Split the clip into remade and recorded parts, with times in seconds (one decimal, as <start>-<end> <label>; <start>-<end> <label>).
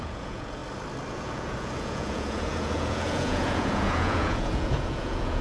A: 0.0-0.6 remade; 0.6-1.1 recorded; 1.1-5.4 remade